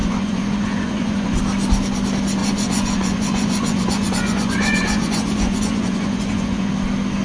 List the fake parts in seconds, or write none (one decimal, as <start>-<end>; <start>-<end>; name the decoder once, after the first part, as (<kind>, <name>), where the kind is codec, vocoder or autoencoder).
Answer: 0.0-1.4 (vocoder, Vocos); 2.4-6.7